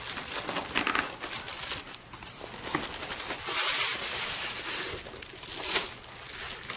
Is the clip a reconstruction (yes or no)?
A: no